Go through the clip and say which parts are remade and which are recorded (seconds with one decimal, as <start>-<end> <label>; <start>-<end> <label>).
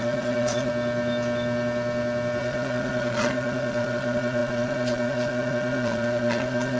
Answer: 0.0-0.7 remade; 0.7-2.4 recorded; 2.4-6.8 remade